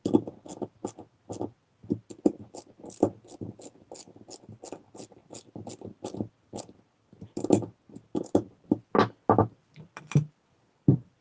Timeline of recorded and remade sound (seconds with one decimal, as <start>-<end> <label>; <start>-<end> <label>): 0.0-11.2 recorded